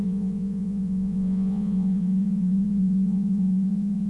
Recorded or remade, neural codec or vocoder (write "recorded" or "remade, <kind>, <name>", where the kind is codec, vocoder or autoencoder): remade, vocoder, Vocos